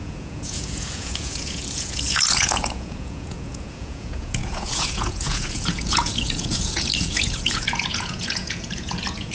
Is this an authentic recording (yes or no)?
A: no